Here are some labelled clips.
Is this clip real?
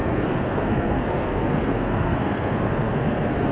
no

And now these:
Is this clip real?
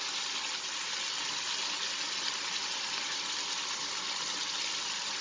yes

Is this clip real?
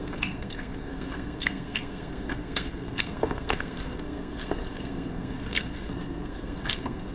no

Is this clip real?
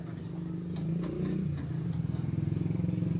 yes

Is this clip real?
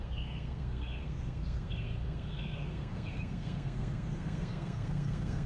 no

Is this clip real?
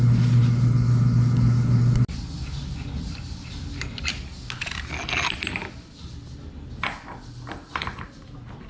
yes